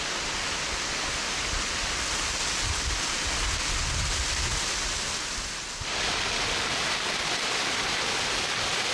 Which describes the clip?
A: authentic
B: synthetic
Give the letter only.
A